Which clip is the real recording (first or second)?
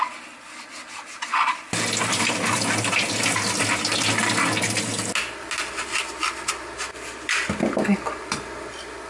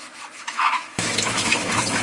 first